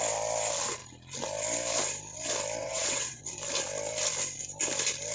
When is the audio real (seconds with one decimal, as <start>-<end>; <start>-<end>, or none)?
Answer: 0.0-2.6; 3.2-5.1